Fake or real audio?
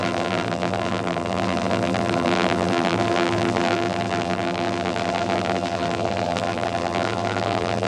fake